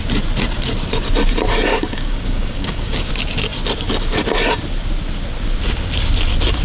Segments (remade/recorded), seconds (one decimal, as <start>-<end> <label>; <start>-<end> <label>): 0.0-1.7 recorded; 1.7-3.1 remade; 3.1-6.6 recorded